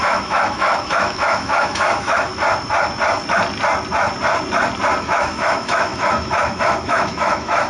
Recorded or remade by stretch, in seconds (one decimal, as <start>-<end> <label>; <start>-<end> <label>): 0.0-2.3 remade; 2.3-5.0 recorded; 5.0-7.7 remade